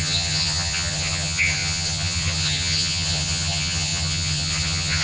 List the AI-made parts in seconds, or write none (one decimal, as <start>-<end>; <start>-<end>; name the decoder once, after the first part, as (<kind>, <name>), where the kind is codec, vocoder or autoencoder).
0.0-5.0 (vocoder, HiFi-GAN)